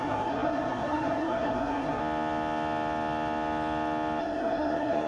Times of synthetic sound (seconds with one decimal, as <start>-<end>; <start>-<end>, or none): 0.0-2.0; 4.2-5.1